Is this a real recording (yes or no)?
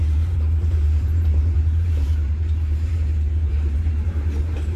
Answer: no